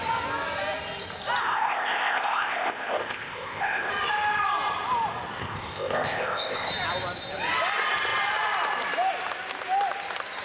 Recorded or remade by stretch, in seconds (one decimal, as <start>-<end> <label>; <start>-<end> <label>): 0.0-1.4 recorded; 1.4-3.9 remade; 3.9-5.4 recorded; 5.4-6.7 remade; 6.7-10.4 recorded